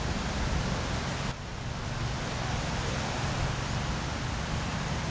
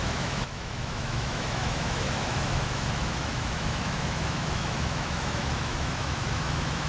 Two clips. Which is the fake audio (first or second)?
second